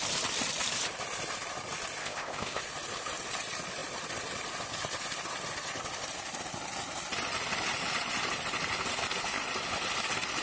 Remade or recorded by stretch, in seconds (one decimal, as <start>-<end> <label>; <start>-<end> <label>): 0.0-2.0 recorded; 2.0-2.6 remade; 2.6-10.4 recorded